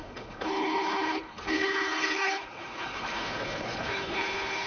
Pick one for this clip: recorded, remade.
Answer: remade